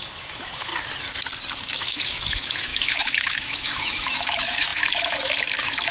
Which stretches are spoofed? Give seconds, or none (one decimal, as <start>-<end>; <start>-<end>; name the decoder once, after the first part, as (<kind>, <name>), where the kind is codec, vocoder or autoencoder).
0.0-0.7 (autoencoder, DAC-VAE); 1.6-5.9